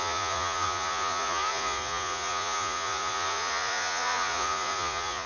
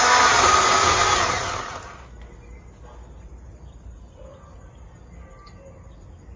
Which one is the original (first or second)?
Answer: second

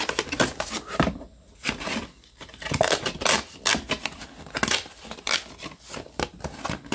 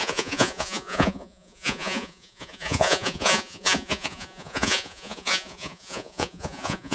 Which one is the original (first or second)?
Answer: first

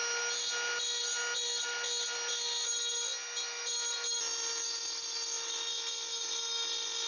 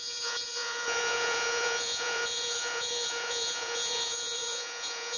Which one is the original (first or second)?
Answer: first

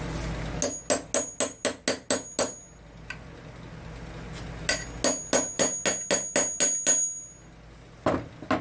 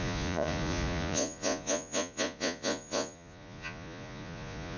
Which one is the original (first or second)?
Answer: first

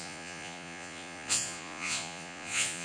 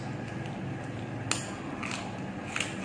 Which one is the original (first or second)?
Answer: second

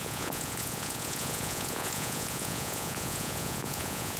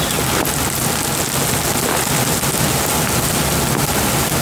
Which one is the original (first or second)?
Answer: second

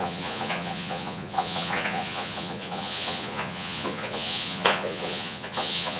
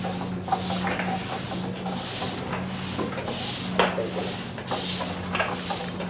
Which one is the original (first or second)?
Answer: second